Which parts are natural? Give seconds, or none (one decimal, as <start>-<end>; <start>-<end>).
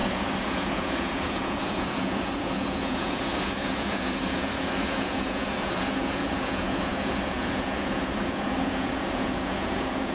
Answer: none